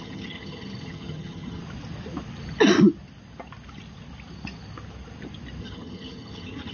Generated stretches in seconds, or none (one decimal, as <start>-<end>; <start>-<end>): 0.0-1.6; 5.6-6.7